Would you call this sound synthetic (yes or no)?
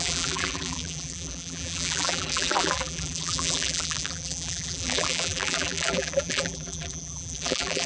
yes